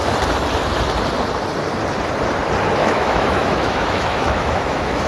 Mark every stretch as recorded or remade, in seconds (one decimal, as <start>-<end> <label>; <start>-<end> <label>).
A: 0.0-2.8 recorded; 2.8-5.1 remade